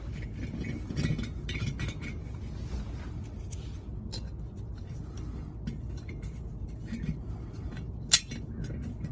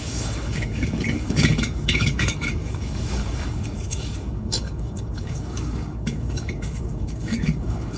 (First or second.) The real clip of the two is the first